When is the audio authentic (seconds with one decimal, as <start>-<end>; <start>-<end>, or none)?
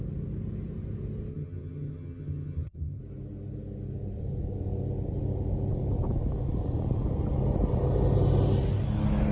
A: 0.0-1.3; 3.0-9.3